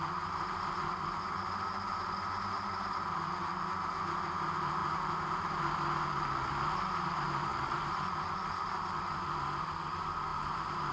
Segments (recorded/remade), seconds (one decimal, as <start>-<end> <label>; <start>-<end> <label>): 0.0-4.8 recorded; 4.8-5.6 remade; 5.6-10.3 recorded; 10.3-10.9 remade